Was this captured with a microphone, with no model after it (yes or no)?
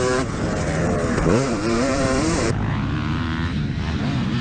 no